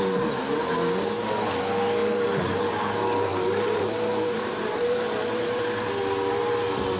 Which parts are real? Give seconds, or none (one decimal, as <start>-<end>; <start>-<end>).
0.0-2.0; 2.9-3.3; 5.9-7.0